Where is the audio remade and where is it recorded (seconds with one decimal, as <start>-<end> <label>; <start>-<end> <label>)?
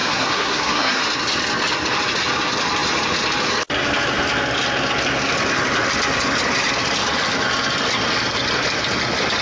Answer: 0.0-1.0 remade; 1.0-9.4 recorded